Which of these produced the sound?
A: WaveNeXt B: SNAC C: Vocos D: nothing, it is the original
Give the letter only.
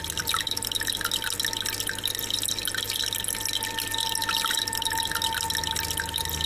D